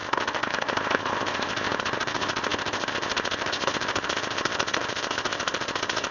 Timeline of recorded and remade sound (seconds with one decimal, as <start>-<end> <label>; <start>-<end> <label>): 0.0-6.1 remade